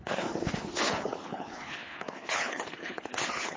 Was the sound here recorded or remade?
remade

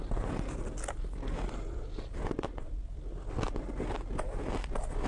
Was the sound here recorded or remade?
recorded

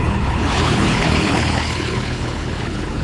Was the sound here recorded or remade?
remade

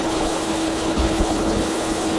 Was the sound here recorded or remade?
remade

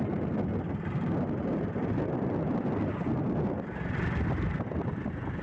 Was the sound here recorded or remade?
recorded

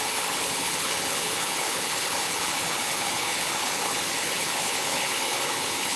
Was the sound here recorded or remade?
remade